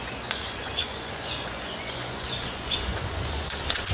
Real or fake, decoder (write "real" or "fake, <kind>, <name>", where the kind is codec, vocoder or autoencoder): fake, vocoder, Vocos